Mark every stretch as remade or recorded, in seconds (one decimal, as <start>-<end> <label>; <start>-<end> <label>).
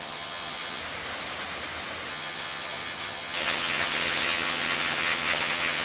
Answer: 0.0-0.8 remade; 0.8-2.1 recorded; 2.1-5.8 remade